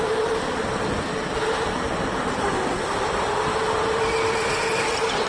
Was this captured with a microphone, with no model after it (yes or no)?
yes